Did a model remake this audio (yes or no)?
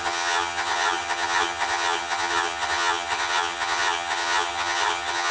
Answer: yes